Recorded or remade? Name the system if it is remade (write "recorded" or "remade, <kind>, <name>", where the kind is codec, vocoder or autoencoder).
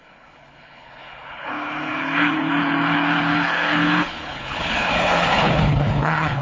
remade, codec, HILCodec